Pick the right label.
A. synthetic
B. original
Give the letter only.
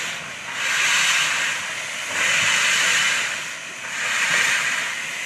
B